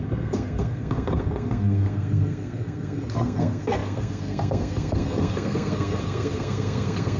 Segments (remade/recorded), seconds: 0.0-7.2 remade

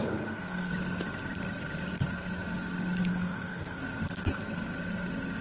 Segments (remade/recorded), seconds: 0.0-0.7 remade; 0.7-3.1 recorded; 3.1-3.8 remade; 3.8-5.4 recorded